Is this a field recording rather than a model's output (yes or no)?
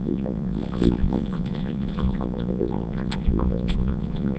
no